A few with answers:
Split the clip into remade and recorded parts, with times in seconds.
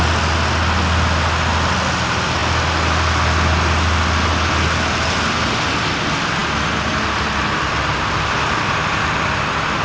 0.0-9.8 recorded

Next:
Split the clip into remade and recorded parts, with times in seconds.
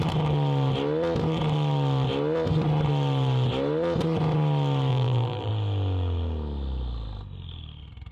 0.0-4.9 recorded; 4.9-5.5 remade; 5.5-8.1 recorded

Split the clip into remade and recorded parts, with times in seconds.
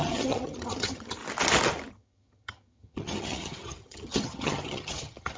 0.0-1.2 remade; 1.2-1.9 recorded; 1.9-5.4 remade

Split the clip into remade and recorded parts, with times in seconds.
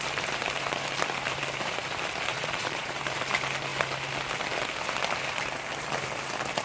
0.0-2.3 recorded; 2.3-2.9 remade; 2.9-6.6 recorded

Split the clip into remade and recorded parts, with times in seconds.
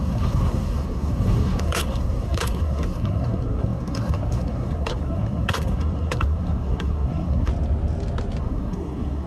0.0-7.5 remade; 7.5-8.4 recorded; 8.4-9.3 remade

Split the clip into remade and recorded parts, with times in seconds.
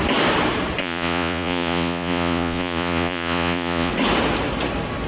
0.0-0.8 recorded; 0.8-3.9 remade; 3.9-5.1 recorded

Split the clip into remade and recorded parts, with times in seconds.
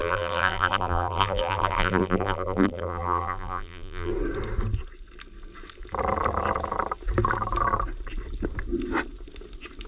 0.0-4.1 remade; 4.1-9.9 recorded